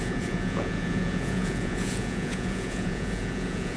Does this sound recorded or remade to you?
remade